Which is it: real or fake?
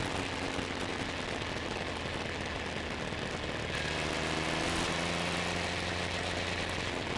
real